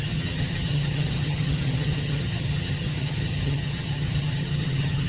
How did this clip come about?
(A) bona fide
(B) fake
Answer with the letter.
B